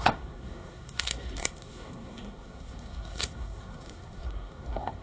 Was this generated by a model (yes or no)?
yes